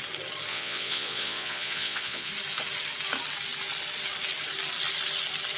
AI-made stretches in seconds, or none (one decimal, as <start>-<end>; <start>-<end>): 0.5-2.3